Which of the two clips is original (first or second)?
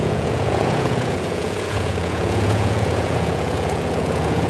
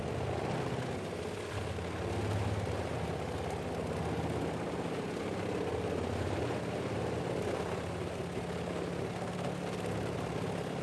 second